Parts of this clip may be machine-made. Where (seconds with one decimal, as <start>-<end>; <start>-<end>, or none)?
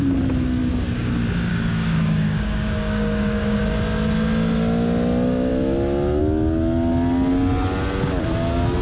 0.6-1.1; 1.5-3.6